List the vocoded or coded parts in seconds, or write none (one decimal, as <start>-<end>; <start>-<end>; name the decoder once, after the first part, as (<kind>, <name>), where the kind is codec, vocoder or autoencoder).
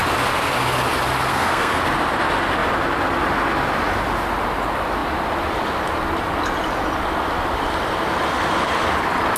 1.3-1.8 (codec, SNAC)